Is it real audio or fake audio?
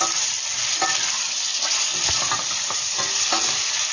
fake